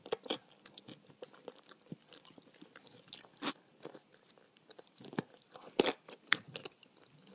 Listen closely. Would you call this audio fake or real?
real